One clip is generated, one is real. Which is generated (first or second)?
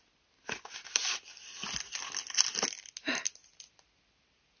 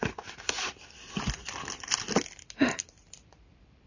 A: second